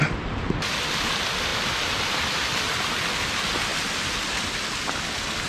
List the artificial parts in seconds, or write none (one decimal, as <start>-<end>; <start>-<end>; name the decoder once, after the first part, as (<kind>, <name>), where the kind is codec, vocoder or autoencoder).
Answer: none